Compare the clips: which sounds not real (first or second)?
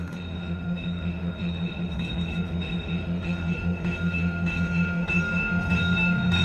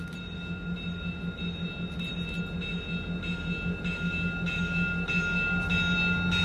first